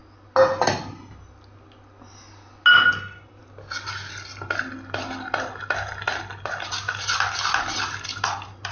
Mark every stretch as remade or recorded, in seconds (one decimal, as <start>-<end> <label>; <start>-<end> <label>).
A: 0.0-8.7 recorded